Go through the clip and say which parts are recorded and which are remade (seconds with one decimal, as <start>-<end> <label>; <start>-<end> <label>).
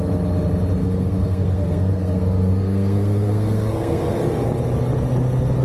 0.0-0.8 recorded; 0.8-4.2 remade; 4.2-5.6 recorded